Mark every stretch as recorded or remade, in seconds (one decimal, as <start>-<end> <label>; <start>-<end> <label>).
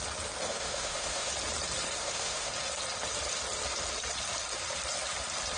0.0-0.5 recorded; 0.5-1.3 remade; 1.3-2.0 recorded; 2.0-2.5 remade; 2.5-5.6 recorded